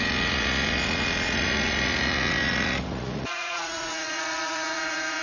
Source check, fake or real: fake